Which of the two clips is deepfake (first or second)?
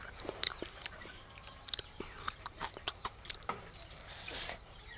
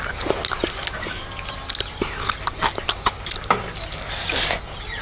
first